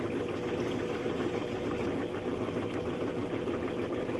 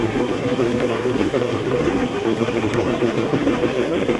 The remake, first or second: second